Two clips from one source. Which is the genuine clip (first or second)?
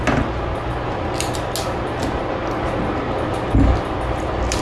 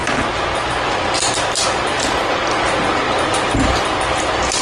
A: first